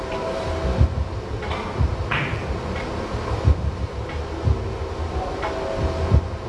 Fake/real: real